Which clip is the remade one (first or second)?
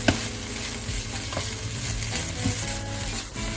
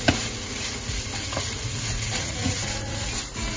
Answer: second